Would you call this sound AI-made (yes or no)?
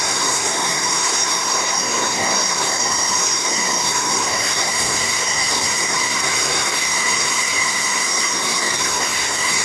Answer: yes